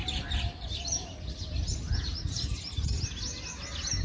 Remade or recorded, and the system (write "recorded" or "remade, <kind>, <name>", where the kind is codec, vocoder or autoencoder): recorded